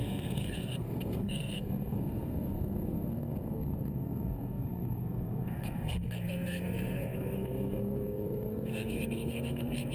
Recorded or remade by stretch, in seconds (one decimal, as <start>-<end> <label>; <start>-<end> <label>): 0.0-9.9 remade